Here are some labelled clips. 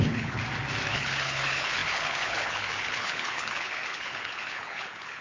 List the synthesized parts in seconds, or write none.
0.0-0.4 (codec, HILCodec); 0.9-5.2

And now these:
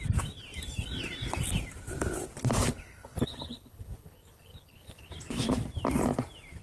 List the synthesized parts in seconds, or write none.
2.8-5.1 (codec, HILCodec)

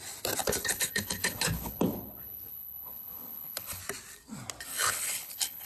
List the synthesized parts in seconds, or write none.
0.4-3.8 (codec, HILCodec); 4.7-5.7

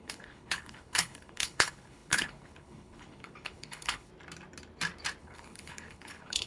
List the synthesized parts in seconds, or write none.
0.0-4.1 (codec, HILCodec); 5.2-6.5

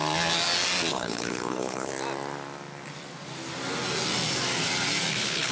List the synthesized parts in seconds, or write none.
0.9-1.9 (codec, HILCodec); 5.1-5.5

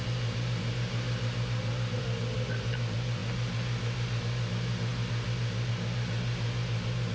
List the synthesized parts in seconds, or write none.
none

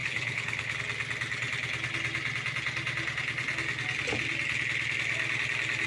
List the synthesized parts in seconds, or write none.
0.0-0.8 (codec, HILCodec)

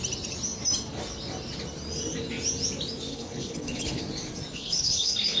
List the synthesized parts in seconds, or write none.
3.1-4.0 (codec, HILCodec); 4.5-5.4